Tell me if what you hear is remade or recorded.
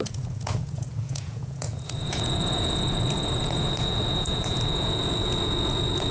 remade